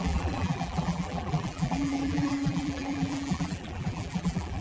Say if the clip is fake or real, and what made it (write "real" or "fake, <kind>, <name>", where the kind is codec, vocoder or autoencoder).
fake, vocoder, BigVGAN v2